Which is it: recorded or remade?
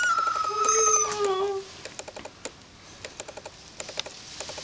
recorded